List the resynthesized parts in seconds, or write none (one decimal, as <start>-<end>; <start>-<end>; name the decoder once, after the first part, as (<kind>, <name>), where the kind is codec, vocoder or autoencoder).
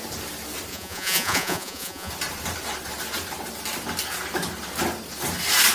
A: 0.7-2.1 (vocoder, Vocos)